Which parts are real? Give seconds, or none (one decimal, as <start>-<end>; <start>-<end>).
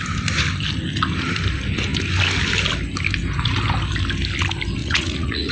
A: 0.0-4.8